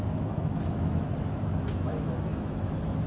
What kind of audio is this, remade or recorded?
remade